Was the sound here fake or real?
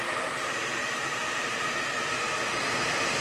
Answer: real